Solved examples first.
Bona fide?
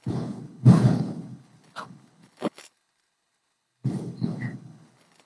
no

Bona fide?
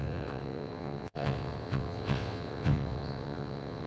no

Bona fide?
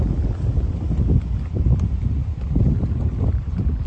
yes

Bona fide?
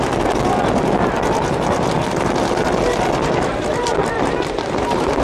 yes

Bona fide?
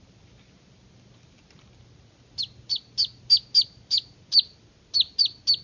yes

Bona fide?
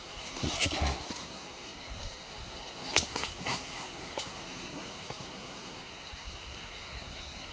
no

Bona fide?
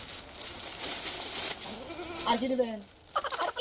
yes